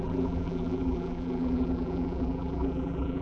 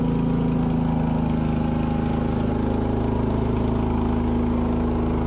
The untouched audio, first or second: second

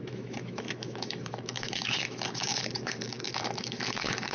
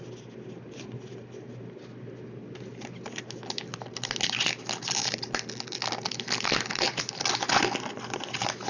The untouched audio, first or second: second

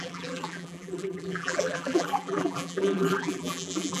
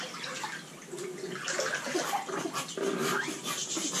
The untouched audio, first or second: second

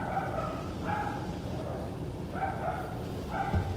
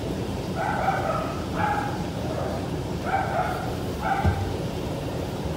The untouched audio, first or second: first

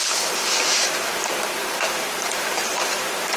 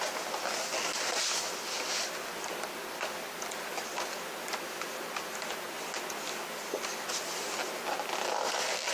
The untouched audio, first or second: second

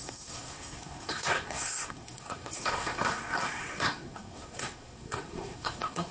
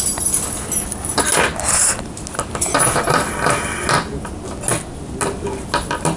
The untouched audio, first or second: second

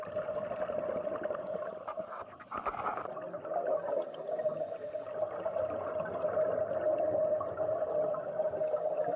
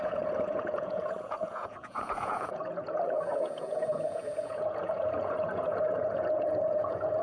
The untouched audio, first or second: first